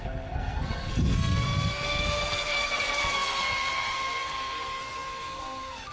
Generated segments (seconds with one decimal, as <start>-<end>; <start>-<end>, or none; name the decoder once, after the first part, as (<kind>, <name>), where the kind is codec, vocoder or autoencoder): 0.0-5.9 (codec, SNAC)